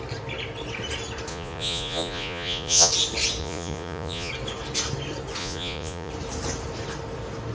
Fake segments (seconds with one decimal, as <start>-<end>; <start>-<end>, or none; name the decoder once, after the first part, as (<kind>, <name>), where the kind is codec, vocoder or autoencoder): 1.3-2.9 (vocoder, Vocos); 3.4-4.3; 5.4-6.1